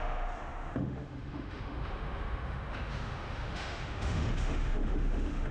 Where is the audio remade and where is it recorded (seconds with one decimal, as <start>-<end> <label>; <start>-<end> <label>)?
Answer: 0.0-5.5 remade